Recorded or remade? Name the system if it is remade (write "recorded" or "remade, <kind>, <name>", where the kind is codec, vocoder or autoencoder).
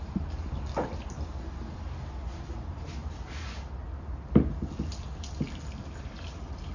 recorded